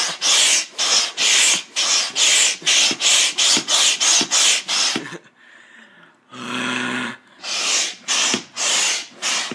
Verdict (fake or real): real